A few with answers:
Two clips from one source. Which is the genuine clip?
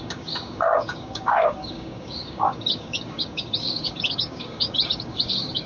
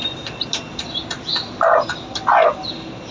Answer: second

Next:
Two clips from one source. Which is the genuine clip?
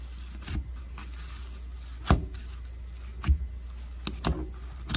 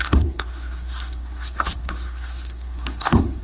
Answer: first